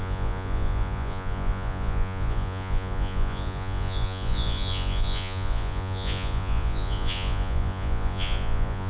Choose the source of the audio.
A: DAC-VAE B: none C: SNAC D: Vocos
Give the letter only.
D